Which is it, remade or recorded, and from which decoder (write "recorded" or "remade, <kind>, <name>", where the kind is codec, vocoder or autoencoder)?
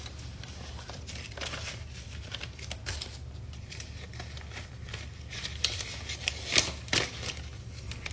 recorded